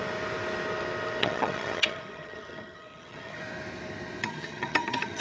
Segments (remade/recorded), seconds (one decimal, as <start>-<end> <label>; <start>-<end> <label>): 0.0-1.2 recorded; 1.2-3.4 remade; 3.4-4.2 recorded; 4.2-5.2 remade